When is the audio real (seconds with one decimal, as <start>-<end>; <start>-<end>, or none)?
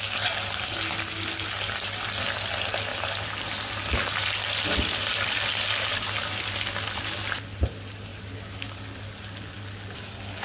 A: 0.0-10.4